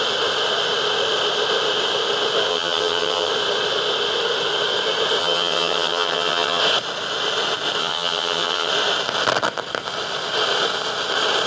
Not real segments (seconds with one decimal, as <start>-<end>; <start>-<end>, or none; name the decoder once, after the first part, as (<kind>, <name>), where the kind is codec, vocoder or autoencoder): 2.5-3.3 (vocoder, HiFi-GAN); 5.2-6.6; 7.8-8.7